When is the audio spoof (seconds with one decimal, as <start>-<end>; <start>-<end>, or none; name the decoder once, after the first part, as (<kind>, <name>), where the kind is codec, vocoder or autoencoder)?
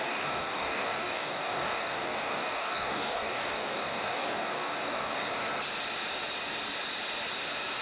0.0-5.3 (codec, DAC)